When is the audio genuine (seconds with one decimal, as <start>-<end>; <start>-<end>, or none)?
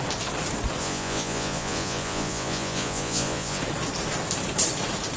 0.0-0.8; 3.6-5.2